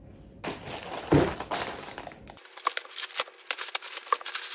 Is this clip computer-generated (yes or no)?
no